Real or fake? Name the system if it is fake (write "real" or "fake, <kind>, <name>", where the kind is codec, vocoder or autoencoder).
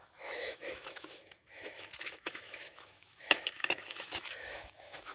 fake, autoencoder, DAC-VAE